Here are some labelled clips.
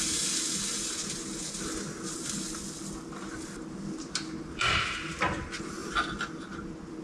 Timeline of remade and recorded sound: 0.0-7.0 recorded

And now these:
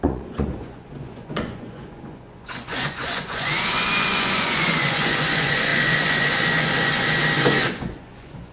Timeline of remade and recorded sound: 0.0-8.5 remade

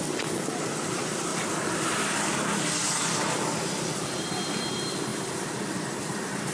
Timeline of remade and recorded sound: 0.0-6.5 recorded

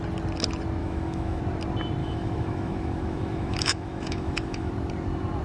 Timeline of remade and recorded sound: 0.0-0.8 recorded; 0.8-1.4 remade; 1.4-2.0 recorded; 2.0-4.7 remade; 4.7-5.4 recorded

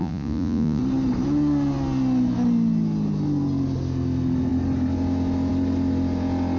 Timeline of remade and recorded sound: 0.0-0.8 remade; 0.8-6.6 recorded

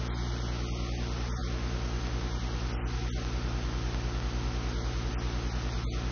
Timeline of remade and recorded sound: 0.0-6.1 recorded

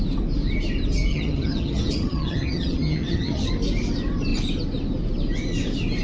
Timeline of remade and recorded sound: 0.0-1.1 recorded; 1.1-3.5 remade; 3.5-6.0 recorded

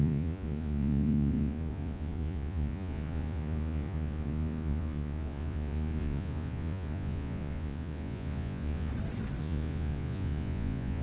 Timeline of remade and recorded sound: 0.0-8.9 remade; 8.9-9.4 recorded; 9.4-11.0 remade